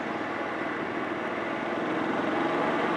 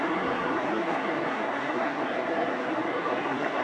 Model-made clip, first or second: second